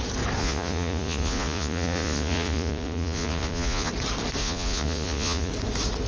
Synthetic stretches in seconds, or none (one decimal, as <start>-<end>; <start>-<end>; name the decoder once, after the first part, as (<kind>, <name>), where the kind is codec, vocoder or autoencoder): 0.4-3.9 (vocoder, Vocos); 4.4-5.5